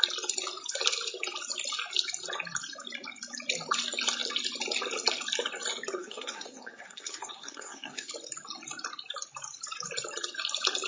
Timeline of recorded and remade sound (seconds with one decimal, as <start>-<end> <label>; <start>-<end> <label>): 0.0-6.0 recorded; 6.0-8.1 remade; 8.1-10.9 recorded